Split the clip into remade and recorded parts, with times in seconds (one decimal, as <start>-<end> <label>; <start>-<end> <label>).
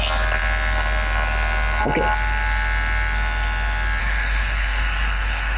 0.0-4.0 recorded; 4.0-5.6 remade